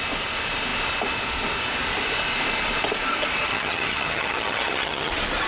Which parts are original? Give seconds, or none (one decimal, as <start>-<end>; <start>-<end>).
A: 0.0-3.5; 5.1-5.5